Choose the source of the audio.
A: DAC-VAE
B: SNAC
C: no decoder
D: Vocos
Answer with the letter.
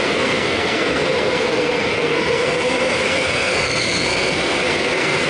B